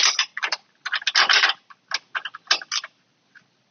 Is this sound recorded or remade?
recorded